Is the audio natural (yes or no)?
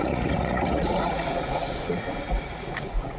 no